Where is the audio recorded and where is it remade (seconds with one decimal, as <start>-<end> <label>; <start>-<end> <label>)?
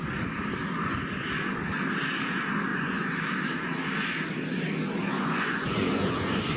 0.0-2.7 recorded; 2.7-3.2 remade; 3.2-5.2 recorded; 5.2-6.6 remade